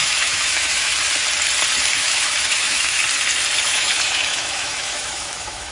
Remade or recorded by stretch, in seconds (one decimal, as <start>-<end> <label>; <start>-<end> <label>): 0.0-0.9 remade; 0.9-1.8 recorded; 1.8-3.0 remade; 3.0-3.6 recorded; 3.6-5.7 remade